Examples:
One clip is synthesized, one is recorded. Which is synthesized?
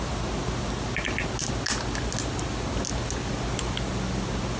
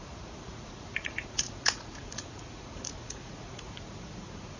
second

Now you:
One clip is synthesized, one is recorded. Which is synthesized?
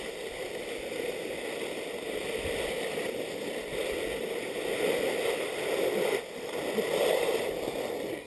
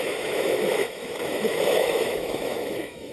second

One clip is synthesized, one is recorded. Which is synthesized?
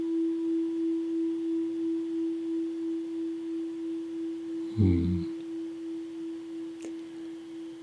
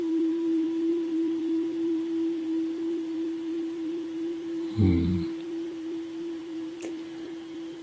second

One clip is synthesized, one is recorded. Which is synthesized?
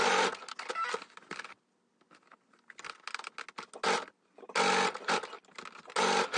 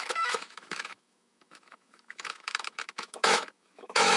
second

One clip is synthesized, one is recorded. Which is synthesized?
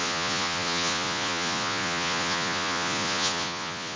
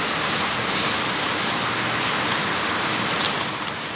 first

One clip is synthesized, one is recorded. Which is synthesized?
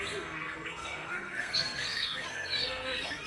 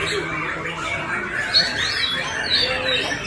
first